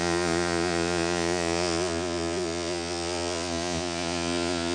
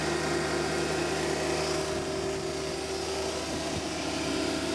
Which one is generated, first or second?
first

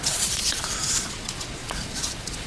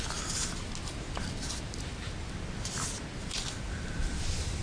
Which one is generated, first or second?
first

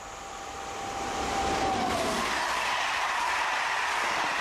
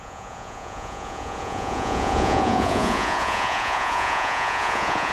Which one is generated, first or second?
second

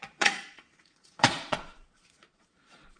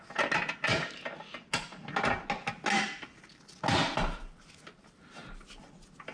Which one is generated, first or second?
first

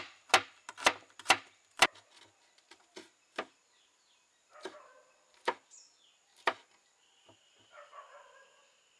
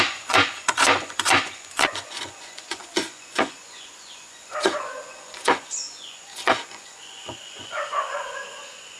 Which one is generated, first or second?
second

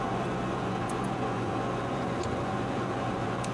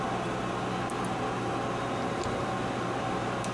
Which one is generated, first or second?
first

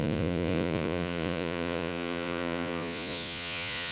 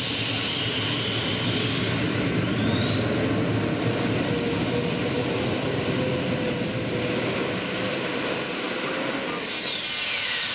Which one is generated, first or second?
first